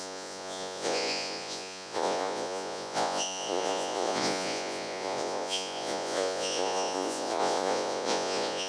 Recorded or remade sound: remade